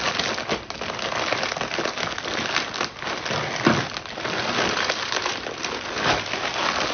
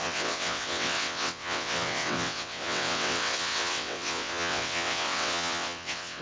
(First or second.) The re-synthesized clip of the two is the second